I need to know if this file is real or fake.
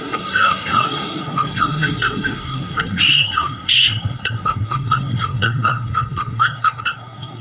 fake